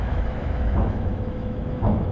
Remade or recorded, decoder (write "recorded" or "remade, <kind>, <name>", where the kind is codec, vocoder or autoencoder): remade, autoencoder, DAC-VAE